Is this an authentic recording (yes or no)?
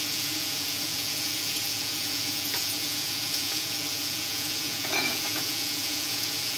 no